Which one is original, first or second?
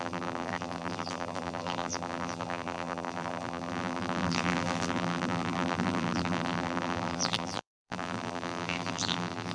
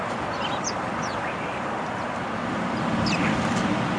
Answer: second